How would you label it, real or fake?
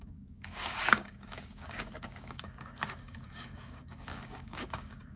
fake